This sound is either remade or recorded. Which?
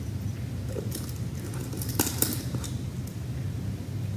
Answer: recorded